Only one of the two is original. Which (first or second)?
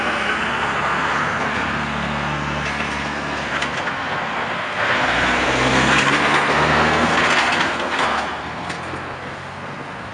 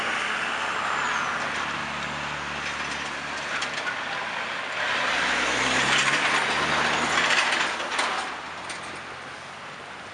second